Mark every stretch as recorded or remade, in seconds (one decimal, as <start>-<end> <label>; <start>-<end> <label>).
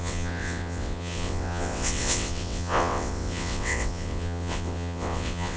0.0-5.6 remade